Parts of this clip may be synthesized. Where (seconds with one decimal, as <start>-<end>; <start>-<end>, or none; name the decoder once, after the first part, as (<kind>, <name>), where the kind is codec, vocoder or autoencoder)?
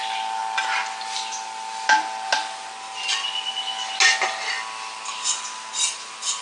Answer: none